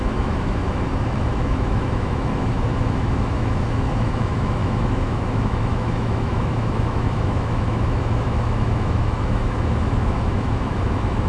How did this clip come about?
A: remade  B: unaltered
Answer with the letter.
A